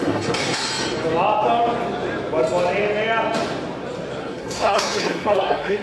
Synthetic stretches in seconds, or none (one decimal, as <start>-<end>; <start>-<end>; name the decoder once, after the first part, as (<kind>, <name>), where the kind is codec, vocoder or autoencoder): 0.0-0.7 (codec, SNAC); 4.2-5.8